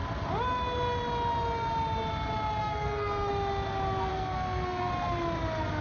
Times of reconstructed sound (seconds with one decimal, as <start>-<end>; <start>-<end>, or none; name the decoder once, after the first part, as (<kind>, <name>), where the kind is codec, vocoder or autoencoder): 2.6-3.3 (codec, SNAC); 4.1-4.9